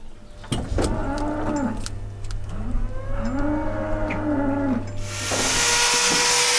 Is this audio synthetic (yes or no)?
no